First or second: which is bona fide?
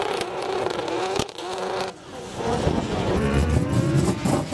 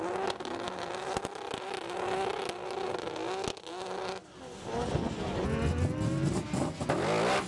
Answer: second